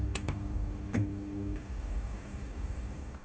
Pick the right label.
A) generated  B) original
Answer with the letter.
A